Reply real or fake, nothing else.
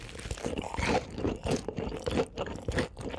fake